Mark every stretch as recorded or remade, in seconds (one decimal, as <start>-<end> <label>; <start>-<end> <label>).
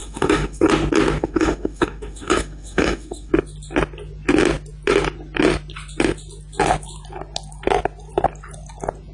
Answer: 0.0-0.7 remade; 0.7-1.2 recorded; 1.2-3.3 remade; 3.3-9.1 recorded